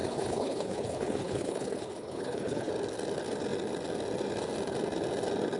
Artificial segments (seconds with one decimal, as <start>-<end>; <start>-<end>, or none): 0.0-2.7